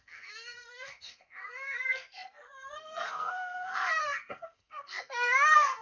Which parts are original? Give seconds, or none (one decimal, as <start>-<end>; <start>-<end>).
none